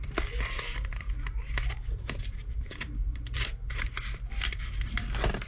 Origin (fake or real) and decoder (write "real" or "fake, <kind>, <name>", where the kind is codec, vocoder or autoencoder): real